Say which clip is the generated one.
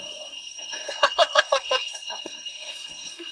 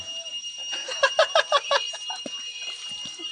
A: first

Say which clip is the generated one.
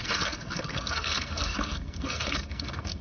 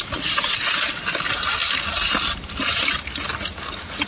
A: first